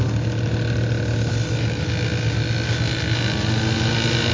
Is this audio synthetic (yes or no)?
no